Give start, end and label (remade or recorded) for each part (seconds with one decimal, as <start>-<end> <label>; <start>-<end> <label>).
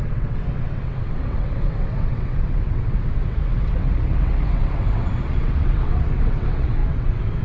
0.0-7.4 remade